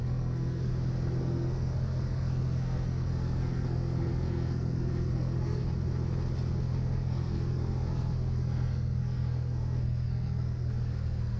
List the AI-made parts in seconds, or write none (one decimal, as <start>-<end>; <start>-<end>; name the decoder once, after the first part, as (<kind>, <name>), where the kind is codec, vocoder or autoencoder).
0.0-0.7 (codec, SNAC); 1.2-5.6; 6.6-11.4